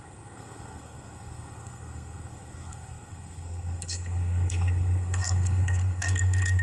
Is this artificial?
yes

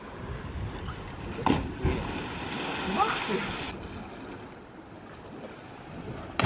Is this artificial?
no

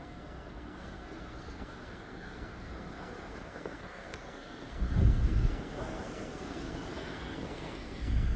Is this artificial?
yes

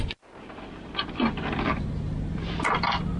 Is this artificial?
no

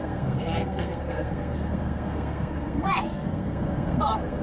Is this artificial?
yes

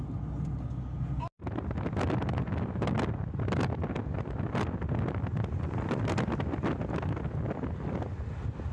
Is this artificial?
no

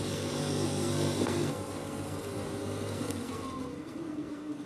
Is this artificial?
yes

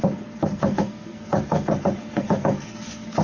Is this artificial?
yes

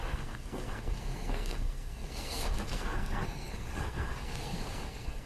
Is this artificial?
yes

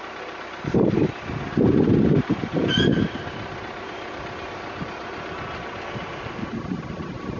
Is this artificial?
no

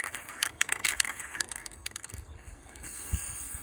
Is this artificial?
yes